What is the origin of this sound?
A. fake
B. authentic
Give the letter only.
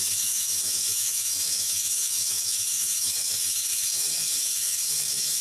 A